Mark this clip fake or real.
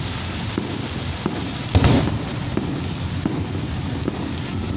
real